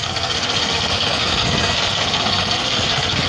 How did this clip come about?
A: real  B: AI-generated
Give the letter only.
B